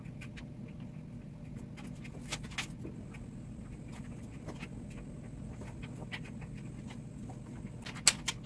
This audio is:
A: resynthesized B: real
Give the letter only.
B